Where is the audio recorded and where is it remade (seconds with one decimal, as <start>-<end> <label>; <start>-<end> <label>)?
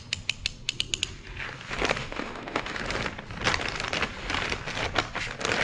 0.0-2.0 recorded; 2.0-2.8 remade; 2.8-5.6 recorded